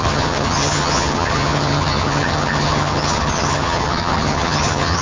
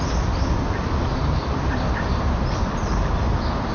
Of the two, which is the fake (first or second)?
first